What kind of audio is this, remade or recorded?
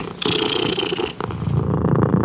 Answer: recorded